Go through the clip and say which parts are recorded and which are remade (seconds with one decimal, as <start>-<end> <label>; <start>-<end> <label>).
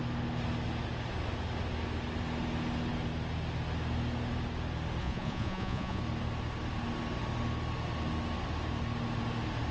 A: 0.0-5.0 recorded; 5.0-6.0 remade; 6.0-9.7 recorded